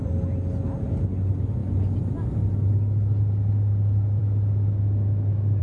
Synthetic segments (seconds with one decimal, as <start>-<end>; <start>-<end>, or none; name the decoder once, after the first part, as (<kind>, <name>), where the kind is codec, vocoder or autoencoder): none